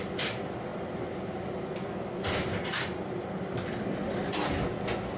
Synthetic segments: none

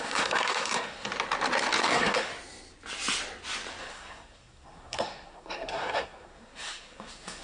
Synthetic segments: 0.0-1.1 (codec, SNAC); 1.8-2.3; 3.8-7.4

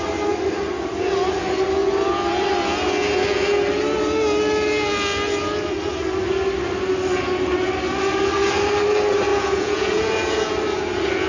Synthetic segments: 9.3-10.5 (vocoder, Vocos)

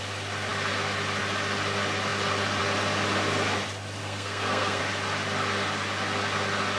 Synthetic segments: 4.0-4.8 (codec, SNAC)

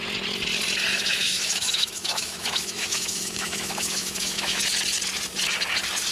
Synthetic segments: 0.9-4.6 (autoencoder, DAC-VAE)

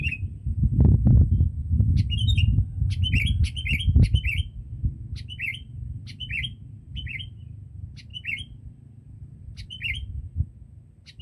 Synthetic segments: none

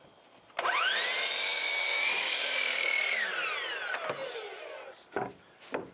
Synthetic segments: 1.5-3.3 (codec, DAC)